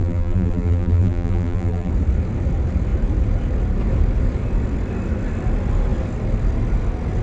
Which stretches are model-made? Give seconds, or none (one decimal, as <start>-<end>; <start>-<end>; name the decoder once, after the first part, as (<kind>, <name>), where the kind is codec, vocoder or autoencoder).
0.0-1.9 (vocoder, BigVGAN v2)